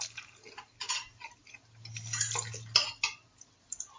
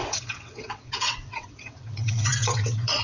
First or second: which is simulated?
second